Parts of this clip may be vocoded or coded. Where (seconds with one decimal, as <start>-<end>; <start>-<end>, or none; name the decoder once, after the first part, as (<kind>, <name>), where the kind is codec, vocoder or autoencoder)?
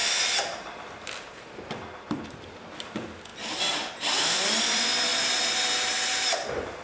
0.0-5.1 (vocoder, BigVGAN v2); 6.1-6.8